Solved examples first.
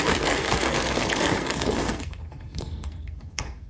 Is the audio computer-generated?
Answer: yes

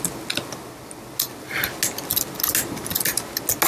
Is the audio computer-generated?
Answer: no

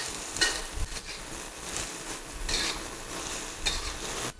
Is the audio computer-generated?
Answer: no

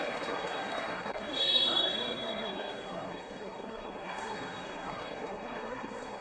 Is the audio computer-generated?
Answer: yes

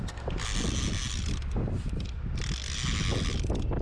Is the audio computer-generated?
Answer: no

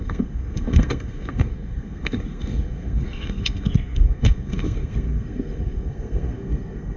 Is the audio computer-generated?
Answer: yes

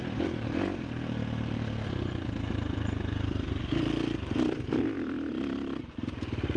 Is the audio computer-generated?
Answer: no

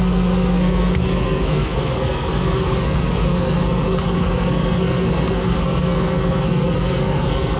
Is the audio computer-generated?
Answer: yes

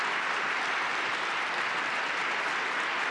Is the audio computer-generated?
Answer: no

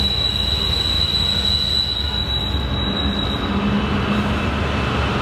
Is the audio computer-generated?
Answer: no